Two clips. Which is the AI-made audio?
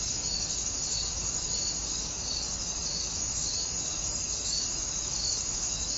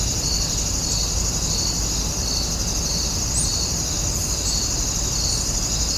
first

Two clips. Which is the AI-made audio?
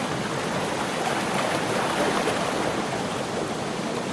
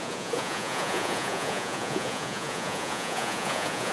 second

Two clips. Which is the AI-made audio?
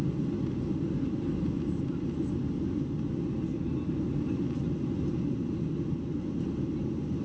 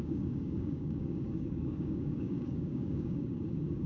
second